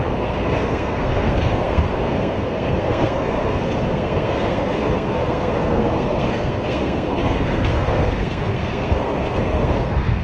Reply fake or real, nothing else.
fake